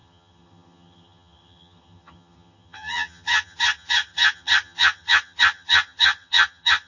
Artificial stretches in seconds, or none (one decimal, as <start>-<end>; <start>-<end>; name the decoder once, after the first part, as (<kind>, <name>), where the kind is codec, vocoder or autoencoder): 0.0-6.9 (vocoder, HiFi-GAN)